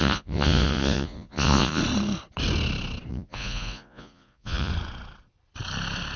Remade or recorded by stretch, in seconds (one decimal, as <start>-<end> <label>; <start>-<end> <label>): 0.0-1.8 remade; 1.8-3.1 recorded; 3.1-4.7 remade; 4.7-6.2 recorded